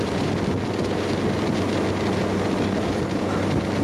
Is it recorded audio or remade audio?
recorded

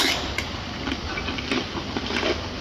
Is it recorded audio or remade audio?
recorded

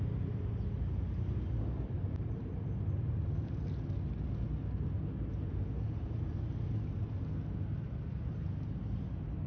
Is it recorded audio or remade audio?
recorded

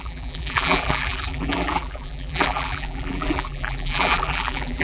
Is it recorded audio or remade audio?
remade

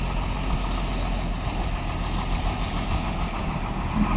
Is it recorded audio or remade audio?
recorded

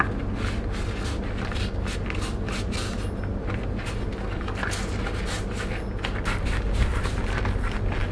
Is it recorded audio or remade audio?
recorded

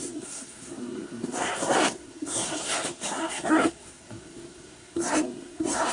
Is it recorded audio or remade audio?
remade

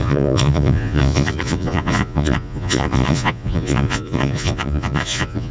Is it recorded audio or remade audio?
remade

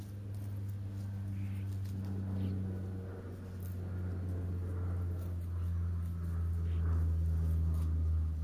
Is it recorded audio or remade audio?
recorded